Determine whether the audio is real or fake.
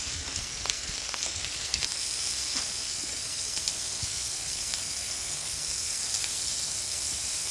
fake